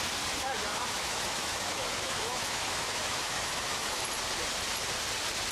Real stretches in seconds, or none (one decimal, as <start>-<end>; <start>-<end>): 0.0-0.7; 4.0-5.5